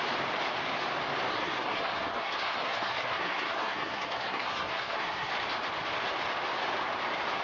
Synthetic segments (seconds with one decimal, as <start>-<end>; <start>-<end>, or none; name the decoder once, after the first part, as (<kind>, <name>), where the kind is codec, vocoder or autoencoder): 1.3-5.3 (codec, SNAC)